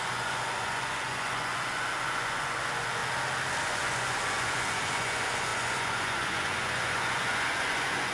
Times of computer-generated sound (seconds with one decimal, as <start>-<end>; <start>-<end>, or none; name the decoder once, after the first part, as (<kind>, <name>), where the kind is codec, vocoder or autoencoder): 0.0-3.0 (vocoder, Vocos); 3.6-8.1